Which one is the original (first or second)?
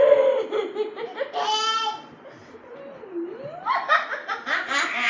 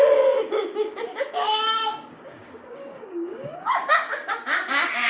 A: first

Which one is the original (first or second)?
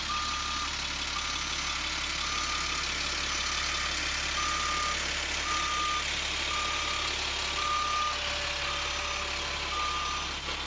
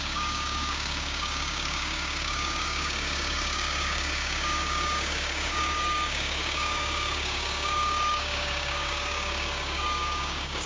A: first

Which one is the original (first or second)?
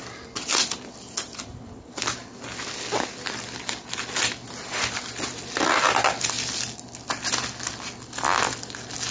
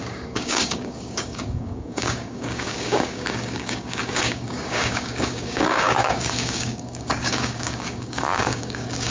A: first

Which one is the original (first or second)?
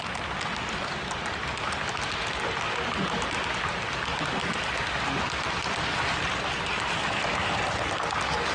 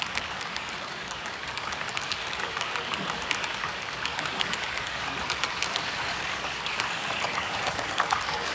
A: first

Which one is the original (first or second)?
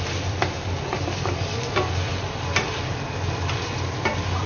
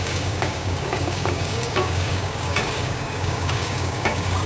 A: first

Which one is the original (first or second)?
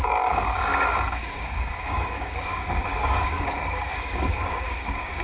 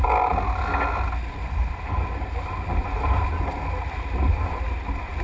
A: second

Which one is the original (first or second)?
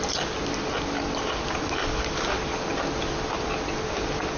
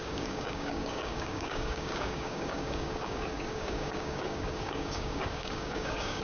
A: first